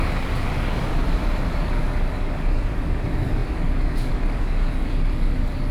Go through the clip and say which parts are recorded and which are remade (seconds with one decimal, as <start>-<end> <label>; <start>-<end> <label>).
0.0-0.9 remade; 0.9-1.6 recorded; 1.6-5.7 remade